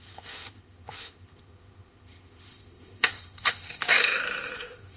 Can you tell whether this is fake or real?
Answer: fake